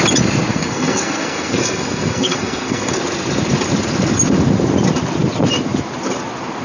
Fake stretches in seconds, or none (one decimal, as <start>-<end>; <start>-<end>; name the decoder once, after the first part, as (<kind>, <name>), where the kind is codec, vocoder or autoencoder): 0.5-3.0 (codec, SNAC)